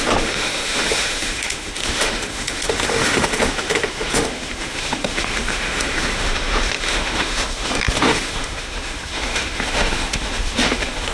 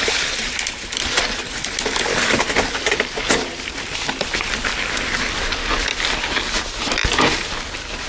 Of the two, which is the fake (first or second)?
first